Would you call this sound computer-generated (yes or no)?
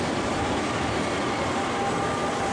yes